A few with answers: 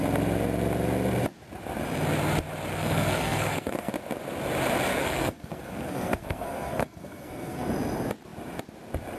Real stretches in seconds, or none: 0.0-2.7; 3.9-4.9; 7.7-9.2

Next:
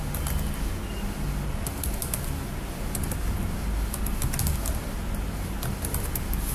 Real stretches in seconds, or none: 0.0-6.5

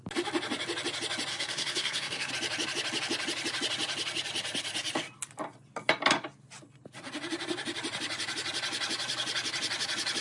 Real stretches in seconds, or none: 0.0-1.3; 2.3-10.2

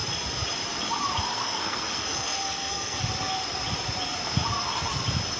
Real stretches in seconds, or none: 0.0-1.3; 3.0-5.4

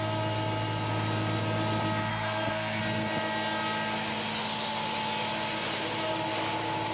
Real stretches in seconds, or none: 0.0-2.1; 2.8-6.9

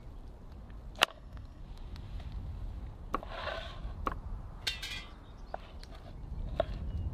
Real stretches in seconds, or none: 0.0-1.1; 1.6-7.1